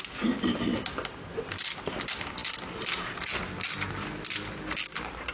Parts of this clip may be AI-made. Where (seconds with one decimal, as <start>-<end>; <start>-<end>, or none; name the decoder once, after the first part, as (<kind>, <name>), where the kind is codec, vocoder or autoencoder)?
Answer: none